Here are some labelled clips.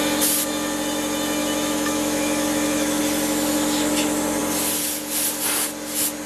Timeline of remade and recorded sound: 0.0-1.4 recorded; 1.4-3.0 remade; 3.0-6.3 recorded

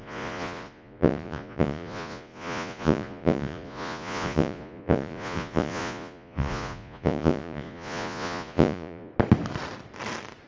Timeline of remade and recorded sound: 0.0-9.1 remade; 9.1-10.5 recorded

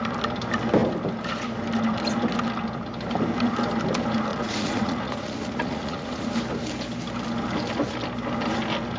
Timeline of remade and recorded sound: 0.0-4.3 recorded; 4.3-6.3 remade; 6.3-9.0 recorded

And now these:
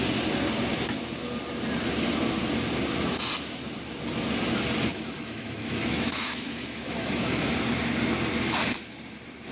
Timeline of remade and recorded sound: 0.0-4.9 recorded; 4.9-7.5 remade; 7.5-9.5 recorded

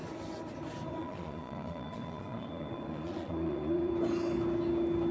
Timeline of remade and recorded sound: 0.0-1.0 recorded; 1.0-3.9 remade; 3.9-5.1 recorded

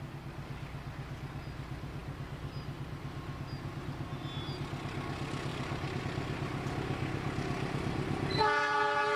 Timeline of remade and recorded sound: 0.0-5.5 recorded; 5.5-6.0 remade; 6.0-9.2 recorded

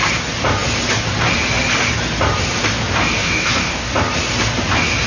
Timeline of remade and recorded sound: 0.0-3.2 recorded; 3.2-3.9 remade; 3.9-5.1 recorded

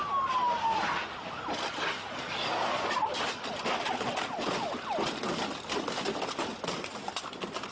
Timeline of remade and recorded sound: 0.0-7.7 recorded